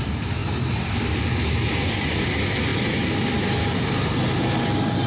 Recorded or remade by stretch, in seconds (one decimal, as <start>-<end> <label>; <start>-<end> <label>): 0.0-5.1 recorded